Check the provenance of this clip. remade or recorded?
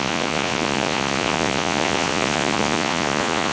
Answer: remade